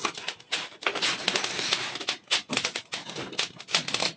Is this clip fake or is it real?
real